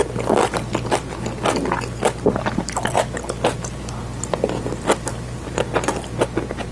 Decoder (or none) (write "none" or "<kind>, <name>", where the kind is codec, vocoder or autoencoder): none